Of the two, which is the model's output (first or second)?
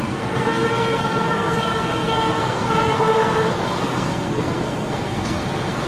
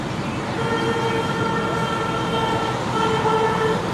first